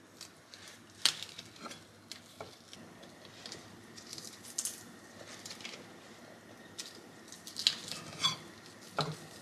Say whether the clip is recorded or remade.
recorded